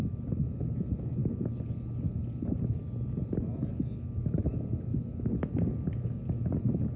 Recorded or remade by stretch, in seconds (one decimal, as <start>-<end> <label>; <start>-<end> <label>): 0.0-7.0 recorded